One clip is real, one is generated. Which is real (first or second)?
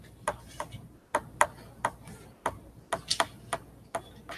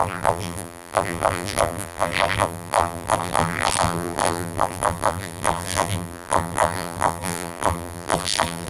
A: first